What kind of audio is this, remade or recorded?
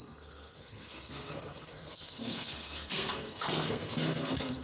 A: remade